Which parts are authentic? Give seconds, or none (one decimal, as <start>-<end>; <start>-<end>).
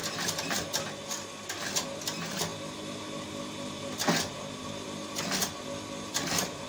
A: 0.0-6.7